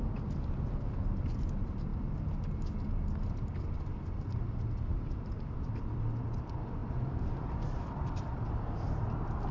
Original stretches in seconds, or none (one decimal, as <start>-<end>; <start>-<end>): 0.0-6.8; 8.5-9.5